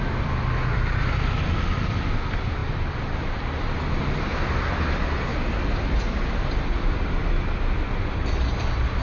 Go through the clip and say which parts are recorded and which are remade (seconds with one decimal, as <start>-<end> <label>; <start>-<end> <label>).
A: 0.0-9.0 recorded

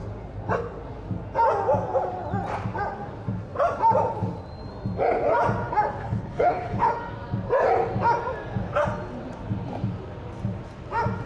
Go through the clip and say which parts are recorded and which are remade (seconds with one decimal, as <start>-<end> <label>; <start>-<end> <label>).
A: 0.0-6.0 recorded; 6.0-6.9 remade; 6.9-11.3 recorded

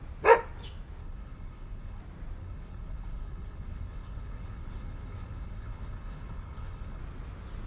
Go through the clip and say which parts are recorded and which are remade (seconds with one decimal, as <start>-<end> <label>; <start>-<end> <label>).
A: 0.0-1.0 recorded; 1.0-2.0 remade; 2.0-2.4 recorded; 2.4-7.0 remade; 7.0-7.7 recorded

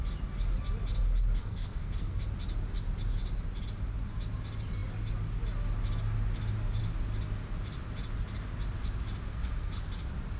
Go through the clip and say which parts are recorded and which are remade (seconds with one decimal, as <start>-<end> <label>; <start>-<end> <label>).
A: 0.0-1.4 recorded; 1.4-2.3 remade; 2.3-9.3 recorded; 9.3-9.9 remade; 9.9-10.4 recorded

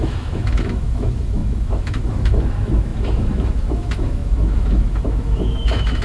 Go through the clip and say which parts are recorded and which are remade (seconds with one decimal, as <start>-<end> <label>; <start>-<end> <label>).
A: 0.0-6.0 remade

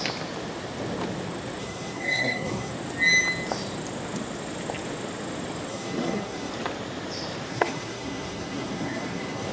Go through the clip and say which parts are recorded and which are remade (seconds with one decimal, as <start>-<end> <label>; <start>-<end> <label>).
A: 0.0-1.6 recorded; 1.6-2.7 remade; 2.7-5.7 recorded; 5.7-6.5 remade; 6.5-7.5 recorded; 7.5-9.5 remade

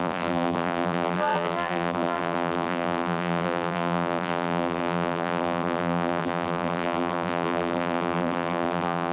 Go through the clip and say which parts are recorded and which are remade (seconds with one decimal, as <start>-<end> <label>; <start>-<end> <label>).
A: 0.0-9.1 remade